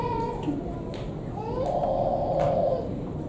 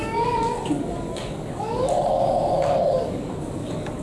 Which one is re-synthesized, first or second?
second